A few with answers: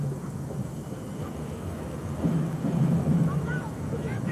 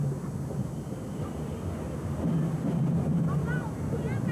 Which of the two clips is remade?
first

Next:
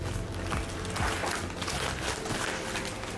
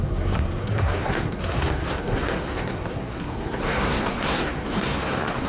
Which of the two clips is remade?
second